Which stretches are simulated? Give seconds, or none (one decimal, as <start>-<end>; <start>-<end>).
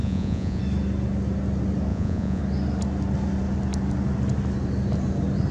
0.0-0.6; 1.9-2.4